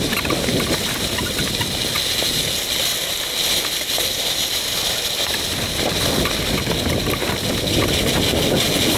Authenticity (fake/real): real